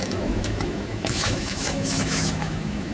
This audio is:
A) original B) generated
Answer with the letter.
B